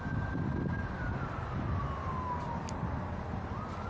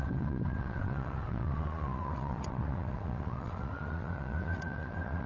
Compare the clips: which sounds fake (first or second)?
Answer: second